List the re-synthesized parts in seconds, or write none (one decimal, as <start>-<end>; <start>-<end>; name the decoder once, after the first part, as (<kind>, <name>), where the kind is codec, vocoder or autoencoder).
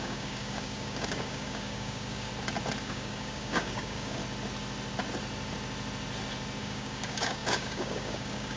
0.0-2.3 (codec, DAC); 2.8-4.2; 6.6-8.6